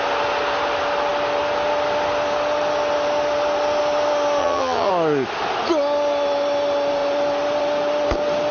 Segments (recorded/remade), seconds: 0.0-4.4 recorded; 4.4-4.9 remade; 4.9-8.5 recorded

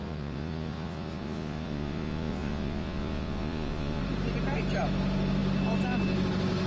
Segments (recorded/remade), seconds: 0.0-4.0 remade; 4.0-6.7 recorded

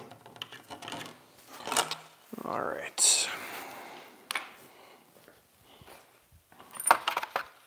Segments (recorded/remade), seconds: 0.0-7.7 recorded

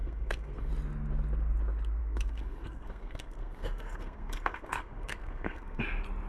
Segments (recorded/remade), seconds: 0.0-0.7 remade; 0.7-2.0 recorded; 2.0-5.8 remade; 5.8-6.3 recorded

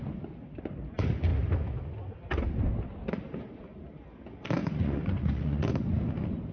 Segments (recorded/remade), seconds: 0.0-4.6 recorded; 4.6-5.7 remade; 5.7-6.5 recorded

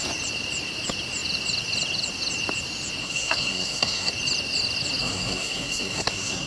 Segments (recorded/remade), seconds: 0.0-3.0 recorded; 3.0-4.1 remade; 4.1-5.0 recorded; 5.0-6.5 remade

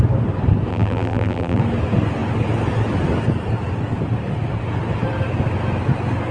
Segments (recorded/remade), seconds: 0.0-0.7 recorded; 0.7-1.6 remade; 1.6-6.3 recorded

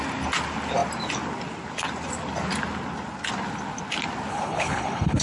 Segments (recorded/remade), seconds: 0.0-4.3 recorded; 4.3-5.2 remade